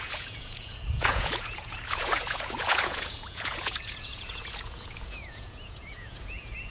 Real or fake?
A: fake